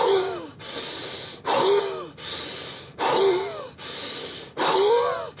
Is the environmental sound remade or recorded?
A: recorded